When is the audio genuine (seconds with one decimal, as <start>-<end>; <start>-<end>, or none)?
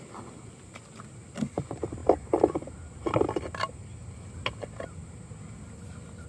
0.0-6.3